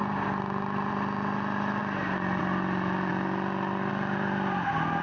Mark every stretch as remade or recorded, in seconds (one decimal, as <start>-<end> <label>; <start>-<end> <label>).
0.0-5.0 recorded